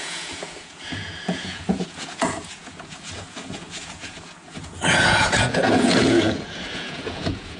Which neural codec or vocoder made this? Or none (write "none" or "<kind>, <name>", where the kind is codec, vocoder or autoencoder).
vocoder, Vocos